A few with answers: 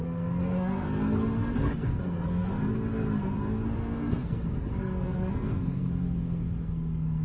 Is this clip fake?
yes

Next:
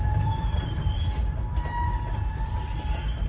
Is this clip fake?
no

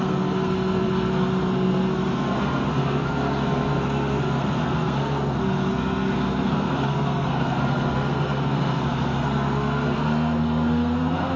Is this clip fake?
yes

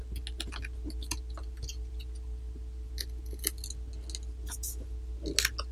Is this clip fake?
no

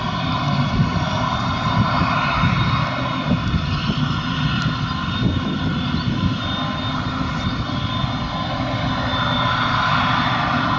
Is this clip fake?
no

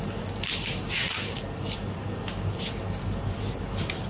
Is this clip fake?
no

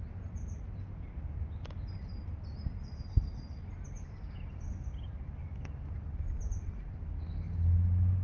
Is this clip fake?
no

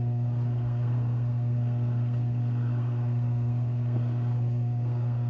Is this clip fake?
yes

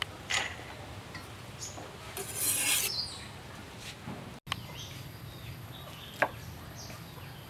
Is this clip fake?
no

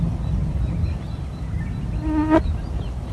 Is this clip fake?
no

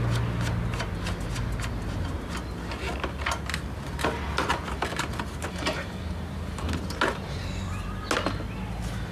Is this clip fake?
no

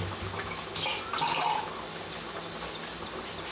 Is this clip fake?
no